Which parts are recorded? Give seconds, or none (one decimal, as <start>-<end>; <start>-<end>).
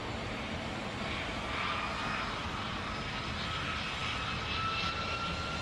0.0-5.6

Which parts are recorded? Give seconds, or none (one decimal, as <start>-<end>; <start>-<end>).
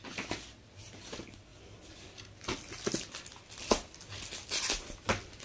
0.0-5.4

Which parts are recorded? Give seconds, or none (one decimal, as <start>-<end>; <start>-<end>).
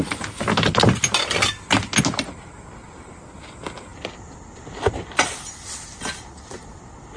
0.0-7.2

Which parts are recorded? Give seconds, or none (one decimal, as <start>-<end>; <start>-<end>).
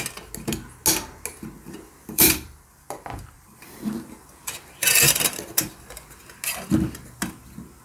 0.0-2.0; 4.1-5.0; 5.7-7.8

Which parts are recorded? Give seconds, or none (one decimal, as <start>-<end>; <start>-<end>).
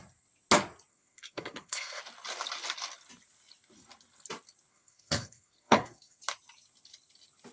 0.0-0.9; 2.0-4.7; 6.2-7.5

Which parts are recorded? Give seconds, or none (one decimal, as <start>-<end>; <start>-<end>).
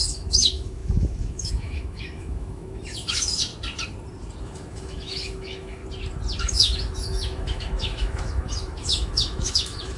3.5-4.4; 5.8-6.4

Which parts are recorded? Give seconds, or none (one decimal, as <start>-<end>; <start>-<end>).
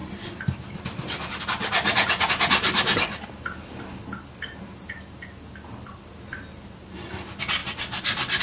0.0-8.4